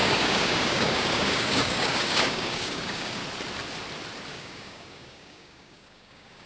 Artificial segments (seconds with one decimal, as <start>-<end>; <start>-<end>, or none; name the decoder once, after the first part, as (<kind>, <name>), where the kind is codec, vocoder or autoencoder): 0.0-3.2 (codec, DAC); 4.3-6.5